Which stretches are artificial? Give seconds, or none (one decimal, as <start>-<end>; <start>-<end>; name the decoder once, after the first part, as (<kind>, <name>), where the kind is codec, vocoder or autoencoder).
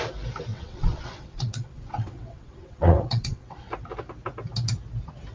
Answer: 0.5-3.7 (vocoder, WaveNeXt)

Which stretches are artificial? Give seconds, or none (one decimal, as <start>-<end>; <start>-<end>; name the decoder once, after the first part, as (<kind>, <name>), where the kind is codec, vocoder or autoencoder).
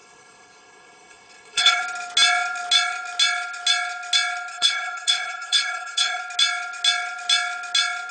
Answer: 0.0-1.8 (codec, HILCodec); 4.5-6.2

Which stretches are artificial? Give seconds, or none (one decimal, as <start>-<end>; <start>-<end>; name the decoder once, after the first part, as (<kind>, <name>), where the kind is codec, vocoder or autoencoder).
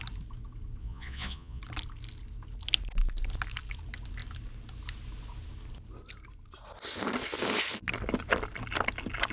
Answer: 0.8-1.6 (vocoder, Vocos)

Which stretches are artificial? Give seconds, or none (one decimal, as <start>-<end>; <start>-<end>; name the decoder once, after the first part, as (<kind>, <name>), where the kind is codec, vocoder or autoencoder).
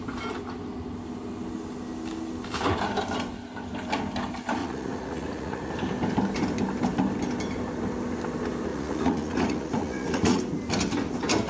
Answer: 4.6-5.7 (vocoder, Vocos); 8.7-10.4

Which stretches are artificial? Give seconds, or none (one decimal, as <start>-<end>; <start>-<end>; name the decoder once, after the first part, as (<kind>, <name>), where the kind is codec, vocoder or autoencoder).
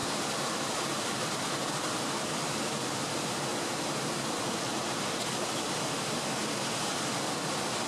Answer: 0.0-3.1 (vocoder, BigVGAN v2)